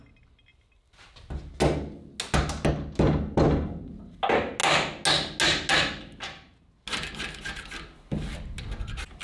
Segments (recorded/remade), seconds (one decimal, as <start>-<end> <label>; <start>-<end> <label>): 0.0-9.2 recorded